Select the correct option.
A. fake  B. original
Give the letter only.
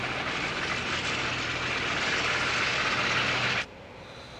B